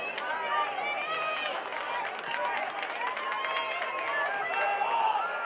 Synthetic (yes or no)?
no